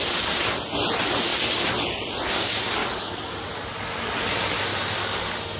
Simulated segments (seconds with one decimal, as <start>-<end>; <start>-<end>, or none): 2.8-3.3; 4.7-5.6